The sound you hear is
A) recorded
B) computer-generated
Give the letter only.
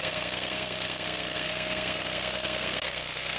B